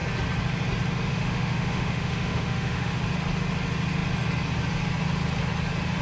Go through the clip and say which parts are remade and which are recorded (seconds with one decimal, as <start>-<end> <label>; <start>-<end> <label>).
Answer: 0.0-1.1 recorded; 1.1-3.0 remade; 3.0-6.0 recorded